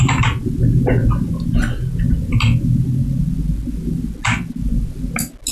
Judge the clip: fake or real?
real